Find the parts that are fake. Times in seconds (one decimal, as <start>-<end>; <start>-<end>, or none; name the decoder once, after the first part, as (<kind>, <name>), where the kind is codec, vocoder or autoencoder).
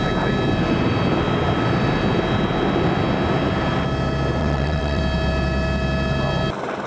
4.4-5.0 (vocoder, WaveNeXt)